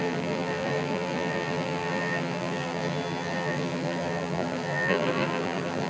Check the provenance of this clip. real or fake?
fake